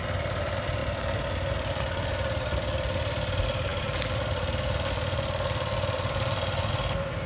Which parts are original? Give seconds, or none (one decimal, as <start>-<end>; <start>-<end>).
0.8-1.5